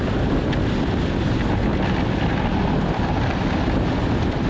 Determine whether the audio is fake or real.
fake